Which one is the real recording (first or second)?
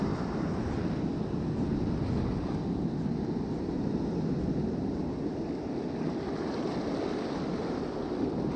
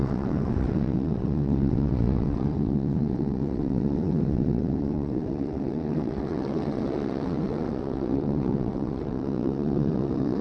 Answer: first